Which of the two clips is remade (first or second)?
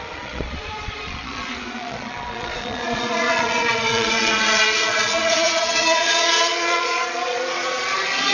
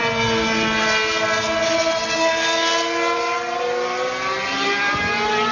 first